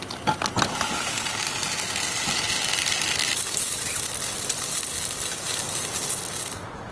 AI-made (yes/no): no